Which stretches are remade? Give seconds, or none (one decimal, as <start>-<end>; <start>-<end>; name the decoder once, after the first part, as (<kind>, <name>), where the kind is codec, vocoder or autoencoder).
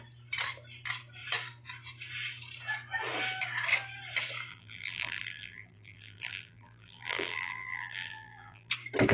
4.5-8.7 (vocoder, BigVGAN v2)